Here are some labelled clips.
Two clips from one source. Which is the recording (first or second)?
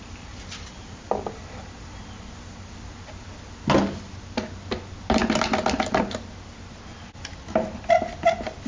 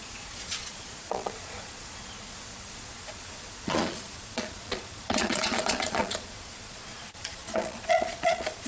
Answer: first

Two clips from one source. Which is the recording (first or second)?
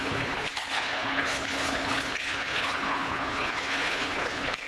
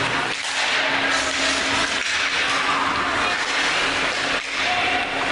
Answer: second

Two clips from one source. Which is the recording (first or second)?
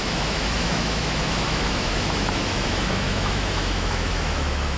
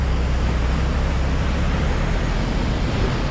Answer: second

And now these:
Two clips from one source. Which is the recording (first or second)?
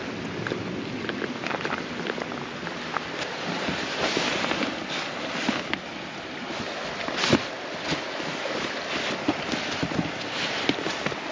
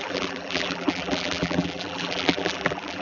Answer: first